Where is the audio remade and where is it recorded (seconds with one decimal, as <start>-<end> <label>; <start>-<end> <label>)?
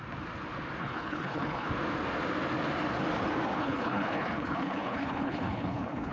0.0-0.8 recorded; 0.8-1.7 remade; 1.7-3.6 recorded; 3.6-6.1 remade